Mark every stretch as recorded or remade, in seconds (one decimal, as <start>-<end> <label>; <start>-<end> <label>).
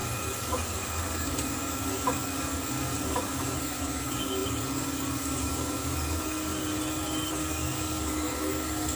0.0-6.5 remade; 6.5-7.3 recorded; 7.3-9.0 remade